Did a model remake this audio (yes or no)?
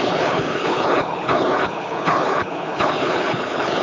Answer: yes